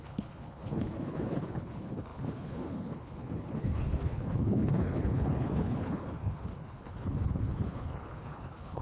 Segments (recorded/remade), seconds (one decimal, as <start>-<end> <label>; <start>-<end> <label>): 0.0-8.8 remade